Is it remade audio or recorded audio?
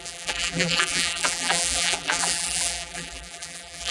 remade